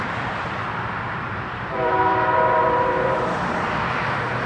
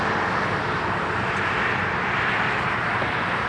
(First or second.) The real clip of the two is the second